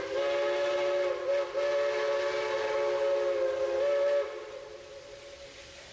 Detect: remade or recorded recorded